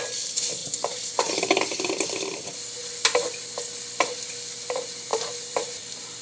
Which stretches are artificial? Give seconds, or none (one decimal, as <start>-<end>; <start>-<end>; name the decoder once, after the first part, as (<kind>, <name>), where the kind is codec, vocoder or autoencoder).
5.1-5.8 (vocoder, BigVGAN v2)